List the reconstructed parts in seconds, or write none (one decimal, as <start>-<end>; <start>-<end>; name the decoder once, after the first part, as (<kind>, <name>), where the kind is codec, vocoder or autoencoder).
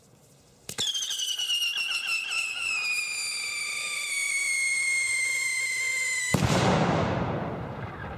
none